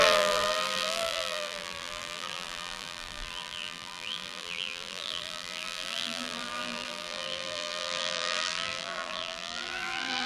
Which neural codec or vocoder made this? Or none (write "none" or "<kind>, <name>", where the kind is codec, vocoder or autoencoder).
vocoder, BigVGAN v2